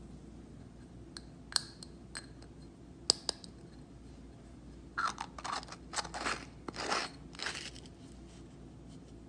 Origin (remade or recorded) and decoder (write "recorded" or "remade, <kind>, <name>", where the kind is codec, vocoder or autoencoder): recorded